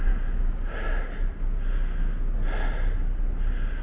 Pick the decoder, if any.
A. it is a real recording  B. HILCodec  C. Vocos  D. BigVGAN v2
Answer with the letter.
A